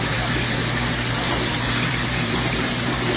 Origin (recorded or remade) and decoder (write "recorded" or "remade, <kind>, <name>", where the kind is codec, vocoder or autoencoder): remade, vocoder, BigVGAN v2